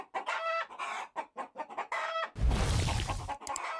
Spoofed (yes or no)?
no